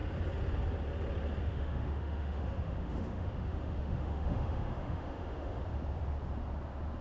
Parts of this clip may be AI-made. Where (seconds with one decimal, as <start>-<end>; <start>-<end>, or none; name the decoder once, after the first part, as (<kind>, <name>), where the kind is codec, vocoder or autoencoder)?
1.4-5.6 (autoencoder, DAC-VAE)